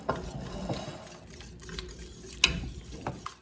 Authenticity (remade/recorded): recorded